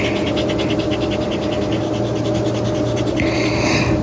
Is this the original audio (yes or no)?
yes